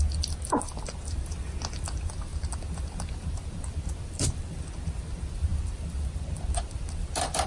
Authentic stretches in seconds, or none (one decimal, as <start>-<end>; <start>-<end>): 0.0-7.5